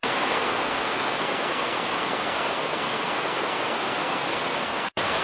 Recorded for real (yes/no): no